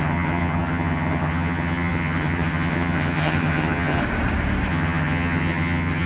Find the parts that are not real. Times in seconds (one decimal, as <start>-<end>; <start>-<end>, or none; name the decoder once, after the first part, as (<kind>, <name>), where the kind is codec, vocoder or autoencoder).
0.0-4.0 (vocoder, HiFi-GAN); 4.7-6.1